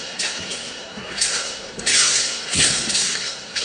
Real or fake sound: fake